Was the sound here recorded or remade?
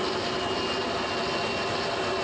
recorded